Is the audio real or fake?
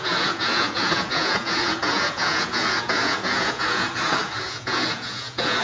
fake